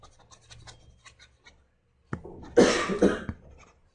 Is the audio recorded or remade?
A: recorded